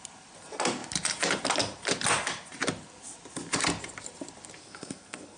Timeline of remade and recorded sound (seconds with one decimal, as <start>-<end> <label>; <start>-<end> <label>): 0.0-4.6 recorded; 4.6-5.4 remade